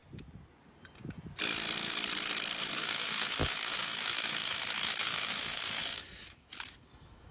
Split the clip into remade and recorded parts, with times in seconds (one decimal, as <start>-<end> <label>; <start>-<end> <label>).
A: 0.0-2.7 recorded; 2.7-7.3 remade